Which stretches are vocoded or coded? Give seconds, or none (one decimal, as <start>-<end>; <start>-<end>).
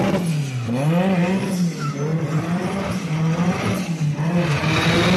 2.1-3.9